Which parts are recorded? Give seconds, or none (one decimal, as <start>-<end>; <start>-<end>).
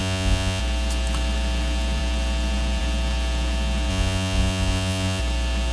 0.6-3.9; 5.2-5.7